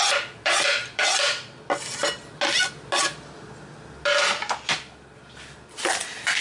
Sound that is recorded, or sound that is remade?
recorded